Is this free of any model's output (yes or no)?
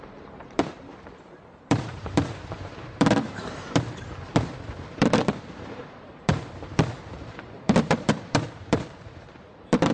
no